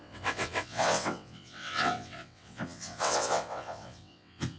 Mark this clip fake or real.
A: fake